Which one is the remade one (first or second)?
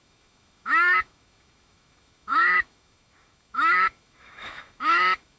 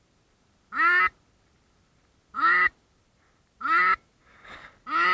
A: first